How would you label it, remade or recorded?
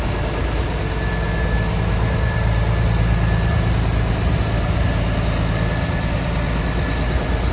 recorded